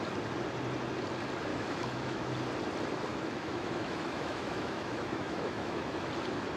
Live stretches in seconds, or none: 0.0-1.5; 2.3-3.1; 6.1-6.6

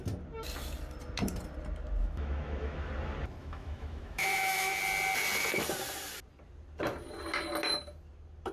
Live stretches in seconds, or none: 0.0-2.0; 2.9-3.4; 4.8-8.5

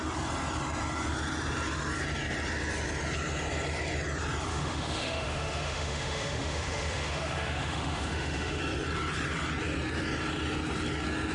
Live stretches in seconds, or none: 0.0-4.5; 8.6-11.3

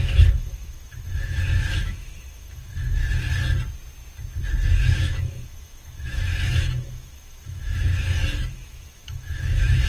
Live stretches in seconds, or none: 3.0-4.8; 7.9-8.5